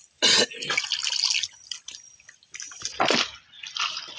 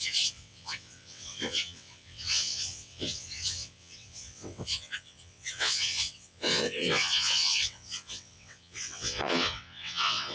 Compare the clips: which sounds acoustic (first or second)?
first